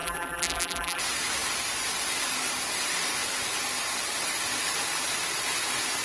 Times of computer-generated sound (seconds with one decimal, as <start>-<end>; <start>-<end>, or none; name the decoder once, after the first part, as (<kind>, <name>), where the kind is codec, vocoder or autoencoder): 0.0-1.0 (vocoder, BigVGAN v2)

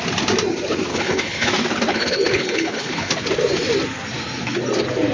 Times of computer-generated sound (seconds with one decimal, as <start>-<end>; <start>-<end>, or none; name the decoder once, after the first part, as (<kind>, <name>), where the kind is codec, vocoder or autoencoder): 0.9-1.5 (codec, HILCodec); 1.9-3.1

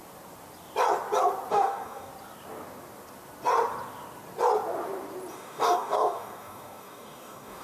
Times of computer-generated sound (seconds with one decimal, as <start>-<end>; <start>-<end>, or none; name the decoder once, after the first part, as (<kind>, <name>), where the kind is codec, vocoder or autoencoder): 1.5-2.1 (codec, DAC); 5.3-7.6